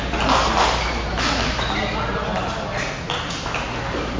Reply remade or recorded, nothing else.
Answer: recorded